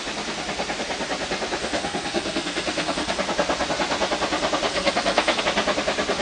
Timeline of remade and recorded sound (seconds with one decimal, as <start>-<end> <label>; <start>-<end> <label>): 0.0-1.6 recorded; 1.6-3.2 remade; 3.2-4.7 recorded; 4.7-5.4 remade; 5.4-6.2 recorded